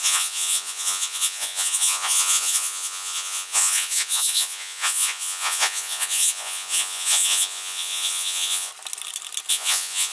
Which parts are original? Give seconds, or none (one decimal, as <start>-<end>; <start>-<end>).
8.7-9.5